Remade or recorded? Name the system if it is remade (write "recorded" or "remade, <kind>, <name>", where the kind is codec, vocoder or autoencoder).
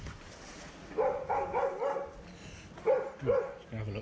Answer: recorded